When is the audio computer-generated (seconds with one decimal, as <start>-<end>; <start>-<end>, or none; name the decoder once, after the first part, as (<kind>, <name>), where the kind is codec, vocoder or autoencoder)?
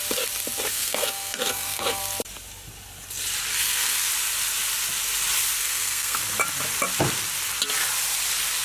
0.7-2.0 (codec, SNAC); 3.5-4.1; 5.6-6.2